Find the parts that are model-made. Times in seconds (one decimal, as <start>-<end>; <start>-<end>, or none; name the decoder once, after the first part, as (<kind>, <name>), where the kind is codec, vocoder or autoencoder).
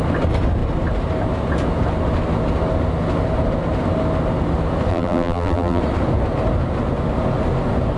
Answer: 4.9-5.8 (vocoder, BigVGAN v2)